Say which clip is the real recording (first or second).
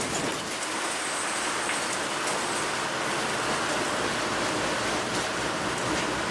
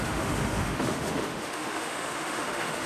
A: first